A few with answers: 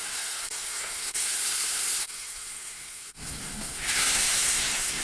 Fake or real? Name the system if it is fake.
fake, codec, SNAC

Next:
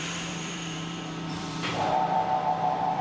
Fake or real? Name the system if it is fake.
fake, vocoder, BigVGAN v2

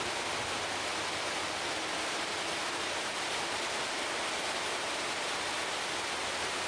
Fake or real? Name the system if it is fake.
real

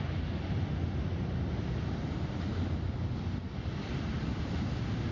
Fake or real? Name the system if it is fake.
real